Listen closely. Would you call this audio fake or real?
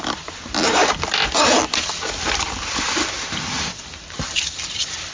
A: fake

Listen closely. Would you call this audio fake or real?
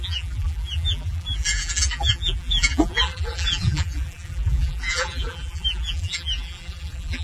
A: fake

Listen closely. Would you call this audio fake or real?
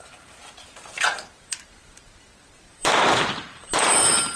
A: fake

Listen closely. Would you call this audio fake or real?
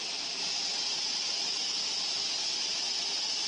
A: fake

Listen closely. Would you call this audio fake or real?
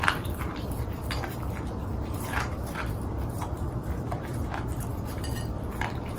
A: fake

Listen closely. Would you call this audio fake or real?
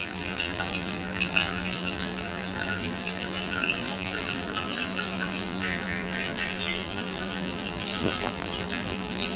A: fake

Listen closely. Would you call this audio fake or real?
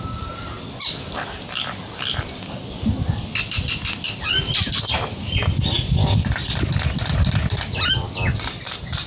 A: real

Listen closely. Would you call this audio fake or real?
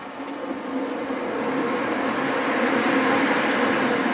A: real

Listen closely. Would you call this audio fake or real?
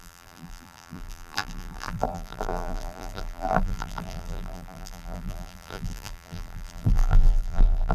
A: fake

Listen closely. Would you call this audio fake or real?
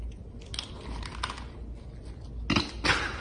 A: real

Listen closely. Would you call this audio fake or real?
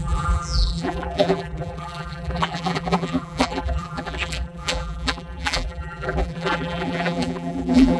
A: fake